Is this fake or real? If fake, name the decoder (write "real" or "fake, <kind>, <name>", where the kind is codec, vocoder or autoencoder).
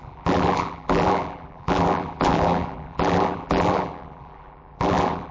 fake, vocoder, BigVGAN v2